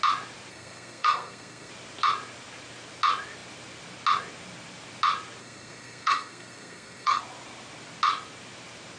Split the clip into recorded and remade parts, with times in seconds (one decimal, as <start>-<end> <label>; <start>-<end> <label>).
0.0-0.5 recorded; 0.5-1.7 remade; 1.7-5.4 recorded; 5.4-7.2 remade; 7.2-9.0 recorded